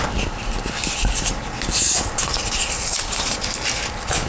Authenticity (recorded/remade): recorded